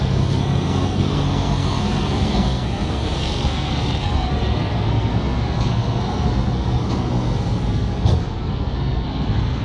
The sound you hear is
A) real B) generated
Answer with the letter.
B